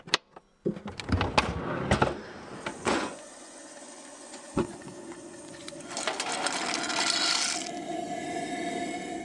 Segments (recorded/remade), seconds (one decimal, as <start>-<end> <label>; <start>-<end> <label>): 0.0-2.7 recorded; 2.7-5.9 remade; 5.9-9.2 recorded